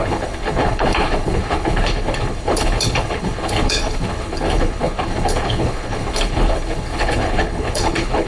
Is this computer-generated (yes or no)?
yes